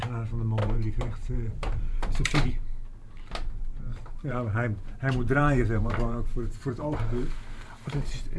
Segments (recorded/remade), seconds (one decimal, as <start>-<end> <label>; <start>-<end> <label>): 0.0-0.6 recorded; 0.6-2.5 remade; 2.5-3.9 recorded; 3.9-6.7 remade; 6.7-8.4 recorded